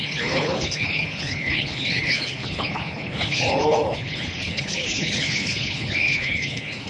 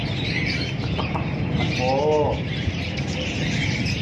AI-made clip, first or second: first